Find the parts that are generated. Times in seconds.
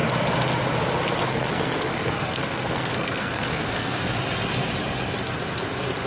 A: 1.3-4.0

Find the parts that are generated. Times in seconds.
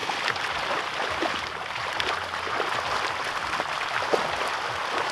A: none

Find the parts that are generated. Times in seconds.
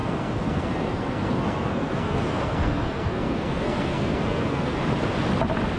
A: 0.0-4.8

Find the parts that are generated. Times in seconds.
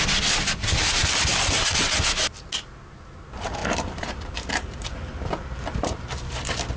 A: 1.0-1.7; 3.6-6.3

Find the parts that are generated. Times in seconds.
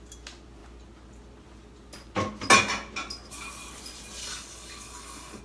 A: 4.2-5.4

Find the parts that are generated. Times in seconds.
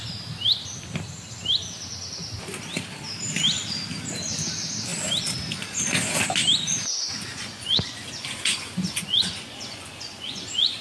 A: 7.3-10.8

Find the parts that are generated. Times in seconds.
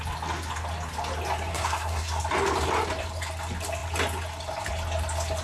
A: 1.5-2.2